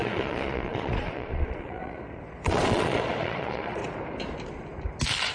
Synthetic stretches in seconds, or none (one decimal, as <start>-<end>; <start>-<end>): 0.0-3.8